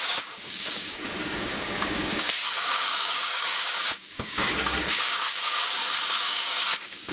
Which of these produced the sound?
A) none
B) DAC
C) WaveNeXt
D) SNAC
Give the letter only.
B